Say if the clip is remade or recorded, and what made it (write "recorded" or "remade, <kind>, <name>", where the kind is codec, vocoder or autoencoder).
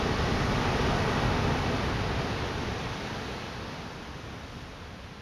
recorded